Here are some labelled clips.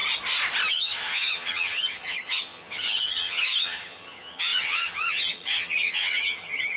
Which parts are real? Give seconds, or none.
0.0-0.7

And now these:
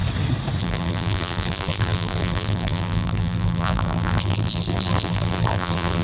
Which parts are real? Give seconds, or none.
0.0-0.6